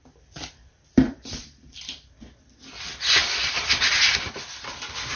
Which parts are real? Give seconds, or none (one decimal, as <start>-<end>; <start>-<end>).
1.8-3.2; 3.8-5.2